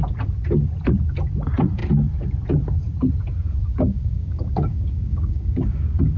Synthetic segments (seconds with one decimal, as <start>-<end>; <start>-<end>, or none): 3.6-6.2